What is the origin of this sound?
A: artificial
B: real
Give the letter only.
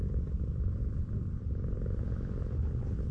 B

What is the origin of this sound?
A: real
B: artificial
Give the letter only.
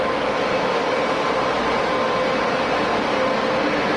A